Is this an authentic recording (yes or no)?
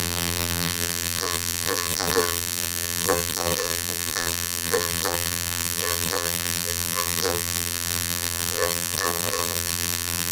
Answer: no